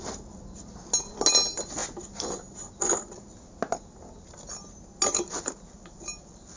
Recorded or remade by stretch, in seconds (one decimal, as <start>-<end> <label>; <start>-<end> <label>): 0.0-6.6 recorded